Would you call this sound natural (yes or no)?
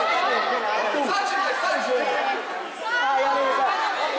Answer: yes